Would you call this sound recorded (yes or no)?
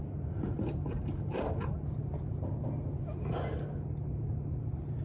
yes